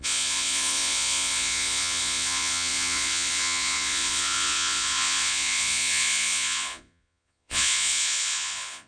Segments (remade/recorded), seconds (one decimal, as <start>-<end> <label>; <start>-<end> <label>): 0.0-8.9 remade